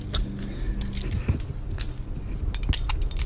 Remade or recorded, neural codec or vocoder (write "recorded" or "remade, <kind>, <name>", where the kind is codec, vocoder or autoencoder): recorded